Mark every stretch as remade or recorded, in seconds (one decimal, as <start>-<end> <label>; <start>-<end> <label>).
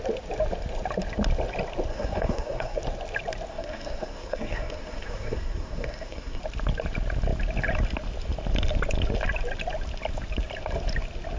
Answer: 0.0-1.9 recorded; 1.9-2.8 remade; 2.8-3.5 recorded; 3.5-6.4 remade; 6.4-11.4 recorded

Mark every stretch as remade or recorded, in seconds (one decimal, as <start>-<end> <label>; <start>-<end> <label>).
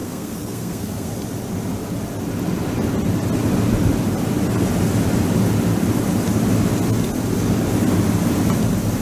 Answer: 0.0-1.1 remade; 1.1-9.0 recorded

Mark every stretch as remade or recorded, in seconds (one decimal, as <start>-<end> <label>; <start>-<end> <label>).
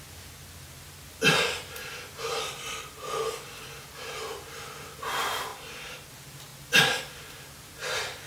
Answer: 0.0-8.3 recorded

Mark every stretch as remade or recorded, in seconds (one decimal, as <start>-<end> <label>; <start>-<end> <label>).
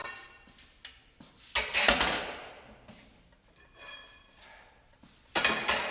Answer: 0.0-5.9 recorded